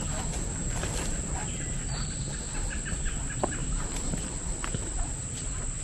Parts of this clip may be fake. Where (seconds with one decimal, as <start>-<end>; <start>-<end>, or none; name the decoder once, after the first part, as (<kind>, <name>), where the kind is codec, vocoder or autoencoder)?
3.6-5.8 (vocoder, BigVGAN v2)